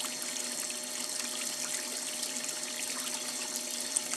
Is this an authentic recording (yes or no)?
yes